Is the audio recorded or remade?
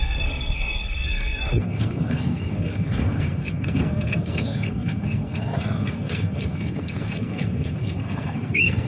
remade